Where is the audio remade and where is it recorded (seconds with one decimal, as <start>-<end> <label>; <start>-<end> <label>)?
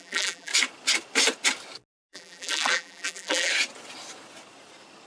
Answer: 0.0-0.5 remade; 0.5-2.1 recorded; 2.1-3.5 remade; 3.5-5.1 recorded